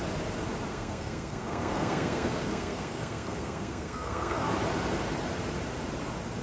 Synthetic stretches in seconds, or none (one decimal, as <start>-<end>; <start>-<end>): 0.7-4.5